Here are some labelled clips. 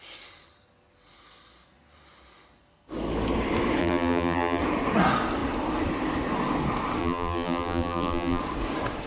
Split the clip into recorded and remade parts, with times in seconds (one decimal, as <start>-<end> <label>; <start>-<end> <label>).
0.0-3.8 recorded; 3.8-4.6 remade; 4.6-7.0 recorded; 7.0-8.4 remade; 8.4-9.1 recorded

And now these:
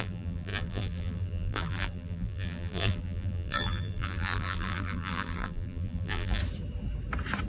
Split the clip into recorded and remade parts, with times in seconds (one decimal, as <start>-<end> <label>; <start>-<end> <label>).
0.0-6.4 remade; 6.4-7.5 recorded

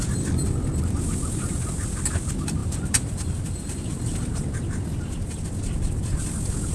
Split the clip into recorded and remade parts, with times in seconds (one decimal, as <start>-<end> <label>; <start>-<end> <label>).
0.0-2.6 recorded; 2.6-4.5 remade; 4.5-6.7 recorded